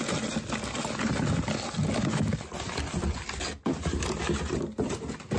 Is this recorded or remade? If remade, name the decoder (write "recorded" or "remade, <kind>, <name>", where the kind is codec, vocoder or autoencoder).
recorded